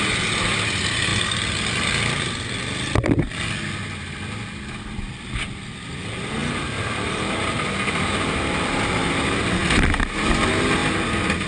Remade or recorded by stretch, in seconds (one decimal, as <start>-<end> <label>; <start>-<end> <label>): 0.0-1.1 recorded; 1.1-5.6 remade; 5.6-6.4 recorded; 6.4-9.1 remade; 9.1-11.5 recorded